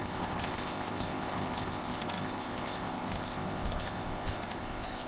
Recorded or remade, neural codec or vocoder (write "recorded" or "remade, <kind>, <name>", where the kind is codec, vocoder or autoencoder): remade, codec, ZipCodec